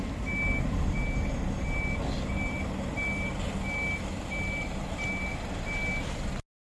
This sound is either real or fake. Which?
real